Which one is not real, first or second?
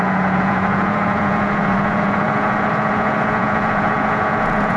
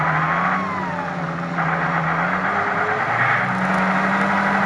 first